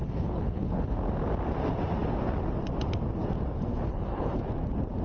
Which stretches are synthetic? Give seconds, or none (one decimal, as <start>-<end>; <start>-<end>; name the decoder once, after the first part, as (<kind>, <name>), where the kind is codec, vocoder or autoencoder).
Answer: 0.0-1.0 (codec, HILCodec); 3.7-4.4

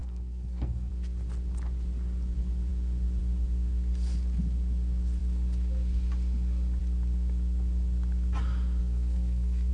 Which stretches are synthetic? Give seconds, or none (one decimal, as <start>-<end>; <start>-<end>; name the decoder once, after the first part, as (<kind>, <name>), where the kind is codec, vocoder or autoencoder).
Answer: 0.0-0.9 (codec, SNAC); 8.8-9.7

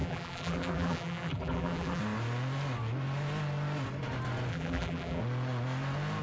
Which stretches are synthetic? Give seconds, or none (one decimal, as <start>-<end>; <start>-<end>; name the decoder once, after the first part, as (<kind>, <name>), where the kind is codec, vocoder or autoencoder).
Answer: 0.0-2.0 (vocoder, BigVGAN v2); 4.5-5.2